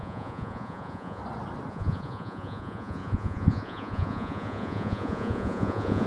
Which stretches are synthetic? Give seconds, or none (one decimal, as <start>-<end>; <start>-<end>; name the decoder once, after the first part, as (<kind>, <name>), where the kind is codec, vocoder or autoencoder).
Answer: 0.0-1.2 (vocoder, Vocos); 1.7-6.1